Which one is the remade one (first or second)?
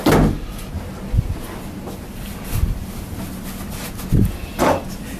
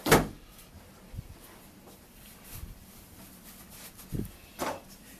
second